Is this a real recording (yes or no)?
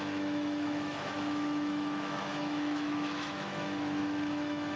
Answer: no